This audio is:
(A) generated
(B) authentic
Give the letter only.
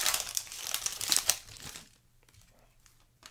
A